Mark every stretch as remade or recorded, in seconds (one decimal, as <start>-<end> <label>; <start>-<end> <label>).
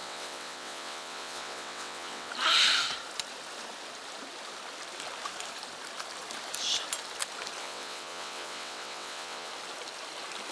0.0-2.3 remade; 2.3-7.6 recorded; 7.6-9.5 remade; 9.5-10.5 recorded